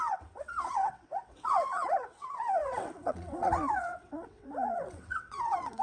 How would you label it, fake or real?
fake